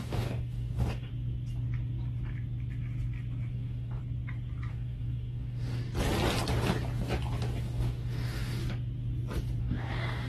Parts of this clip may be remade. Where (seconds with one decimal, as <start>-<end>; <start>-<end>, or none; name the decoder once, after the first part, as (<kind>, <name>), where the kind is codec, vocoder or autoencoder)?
0.0-1.1 (codec, DAC); 3.5-4.0; 4.7-5.8; 7.6-8.6; 9.6-10.3